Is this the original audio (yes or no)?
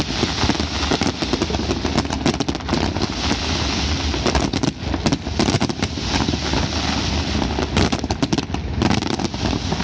yes